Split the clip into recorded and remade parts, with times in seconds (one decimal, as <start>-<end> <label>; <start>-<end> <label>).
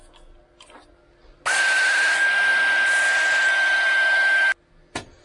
0.0-5.2 recorded